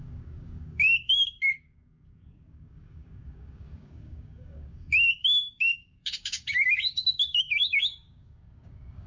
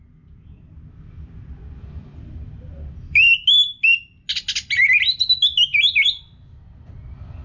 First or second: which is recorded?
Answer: second